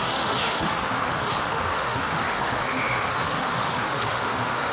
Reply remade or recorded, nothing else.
remade